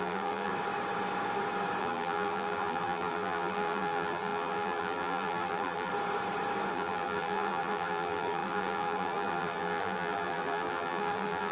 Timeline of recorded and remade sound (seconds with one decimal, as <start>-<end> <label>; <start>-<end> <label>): 0.0-0.5 remade; 0.5-1.8 recorded; 1.8-5.9 remade; 5.9-6.7 recorded; 6.7-11.5 remade